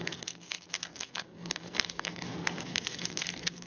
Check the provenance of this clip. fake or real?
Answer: fake